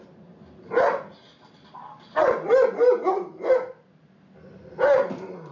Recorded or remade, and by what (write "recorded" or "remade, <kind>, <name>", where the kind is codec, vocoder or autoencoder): recorded